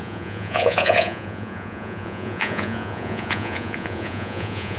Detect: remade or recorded remade